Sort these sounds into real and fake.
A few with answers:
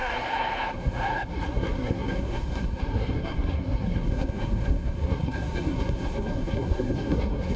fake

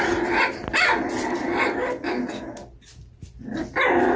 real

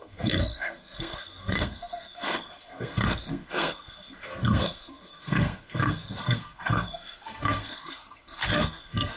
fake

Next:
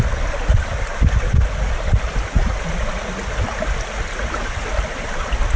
real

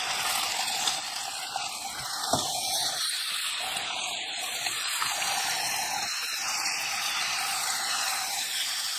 real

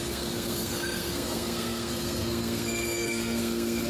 fake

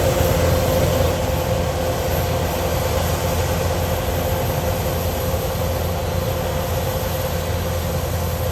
real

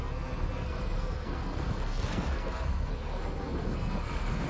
fake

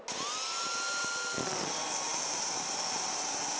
real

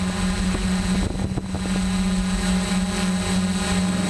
real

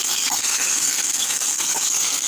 fake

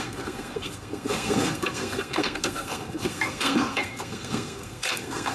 fake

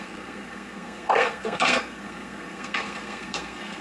fake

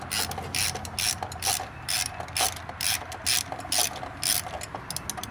real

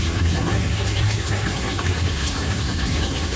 fake